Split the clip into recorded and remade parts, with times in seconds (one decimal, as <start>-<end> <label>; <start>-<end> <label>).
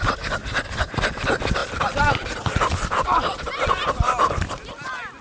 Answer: 0.0-5.2 recorded